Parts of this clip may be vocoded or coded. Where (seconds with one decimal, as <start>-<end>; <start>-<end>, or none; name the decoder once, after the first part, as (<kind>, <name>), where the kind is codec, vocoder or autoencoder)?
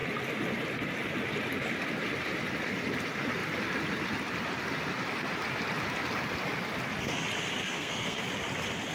7.6-8.2 (codec, SNAC)